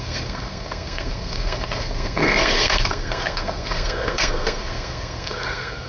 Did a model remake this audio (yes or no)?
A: yes